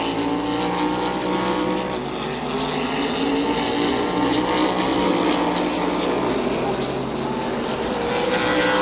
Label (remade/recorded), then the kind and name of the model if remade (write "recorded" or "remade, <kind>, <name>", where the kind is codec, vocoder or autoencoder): recorded